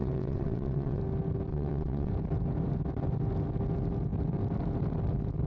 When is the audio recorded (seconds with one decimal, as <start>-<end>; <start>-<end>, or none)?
1.0-1.5; 2.1-5.5